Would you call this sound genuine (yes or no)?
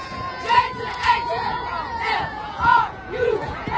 no